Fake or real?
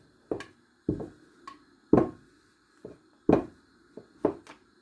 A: real